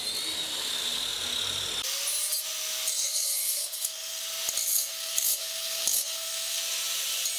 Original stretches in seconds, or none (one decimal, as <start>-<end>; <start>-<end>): 0.0-2.9; 4.2-4.7; 6.6-7.4